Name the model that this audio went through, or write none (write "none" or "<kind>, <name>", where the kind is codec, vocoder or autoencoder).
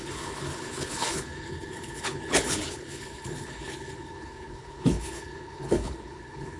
codec, HILCodec